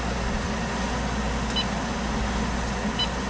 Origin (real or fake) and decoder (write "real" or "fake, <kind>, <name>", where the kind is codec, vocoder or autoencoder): real